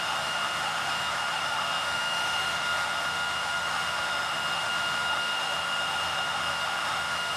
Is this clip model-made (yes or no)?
yes